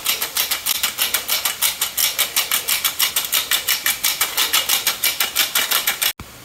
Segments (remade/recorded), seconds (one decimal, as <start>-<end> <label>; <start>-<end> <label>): 0.0-6.4 recorded